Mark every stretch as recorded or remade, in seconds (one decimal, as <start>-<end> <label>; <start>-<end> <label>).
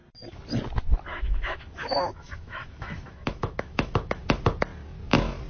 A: 0.0-1.1 recorded; 1.1-4.2 remade; 4.2-5.5 recorded